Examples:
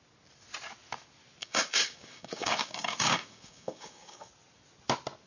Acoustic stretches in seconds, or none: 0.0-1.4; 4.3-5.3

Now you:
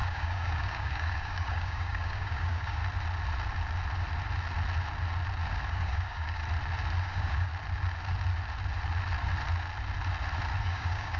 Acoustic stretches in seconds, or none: 2.8-5.7; 6.4-7.0; 7.5-10.6

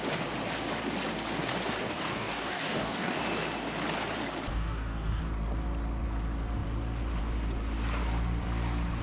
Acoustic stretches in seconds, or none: 0.0-1.8; 3.2-4.5; 5.2-9.0